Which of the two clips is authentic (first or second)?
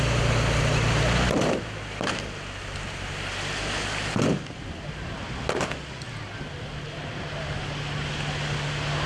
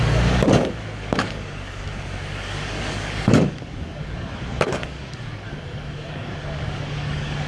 first